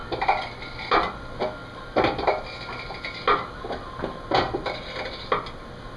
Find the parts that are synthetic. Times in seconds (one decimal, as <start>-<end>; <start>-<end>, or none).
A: none